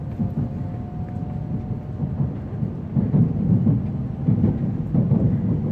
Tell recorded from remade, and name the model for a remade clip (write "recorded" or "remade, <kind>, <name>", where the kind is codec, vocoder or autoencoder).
remade, vocoder, BigVGAN v2